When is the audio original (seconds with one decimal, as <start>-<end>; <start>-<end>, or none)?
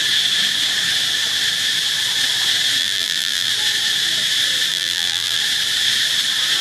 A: 0.0-2.8; 3.5-4.7; 5.4-6.6